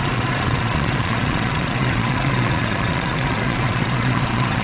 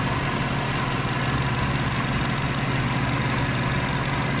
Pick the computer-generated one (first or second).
first